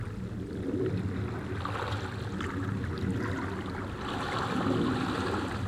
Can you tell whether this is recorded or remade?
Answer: recorded